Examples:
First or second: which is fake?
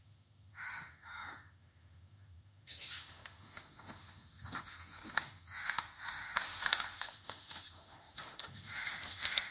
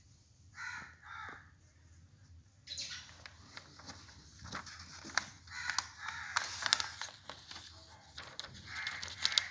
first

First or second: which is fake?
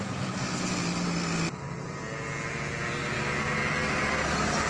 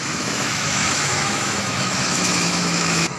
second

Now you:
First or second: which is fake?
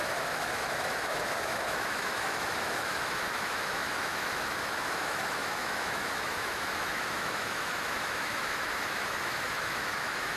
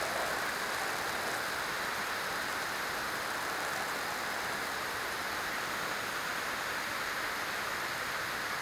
first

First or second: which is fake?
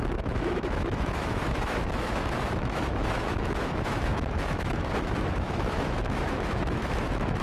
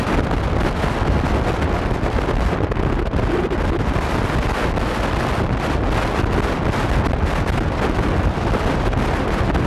first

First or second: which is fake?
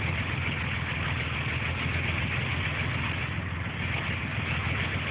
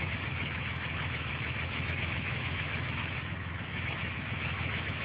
second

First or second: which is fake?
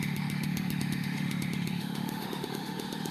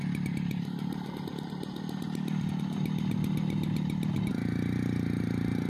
first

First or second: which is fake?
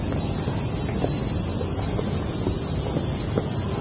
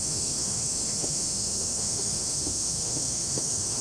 second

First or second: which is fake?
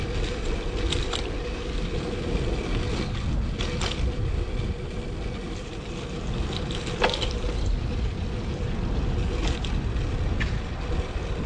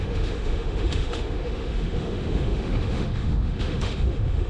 second